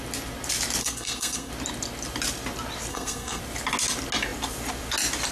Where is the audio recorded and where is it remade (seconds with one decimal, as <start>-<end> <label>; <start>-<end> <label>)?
0.0-0.8 recorded; 0.8-1.5 remade; 1.5-2.9 recorded; 2.9-3.4 remade; 3.4-5.3 recorded